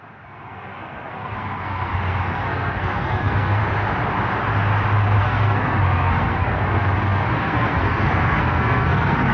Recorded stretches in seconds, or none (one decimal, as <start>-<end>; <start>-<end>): 3.6-5.2